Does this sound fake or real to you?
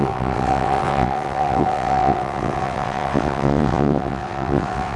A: fake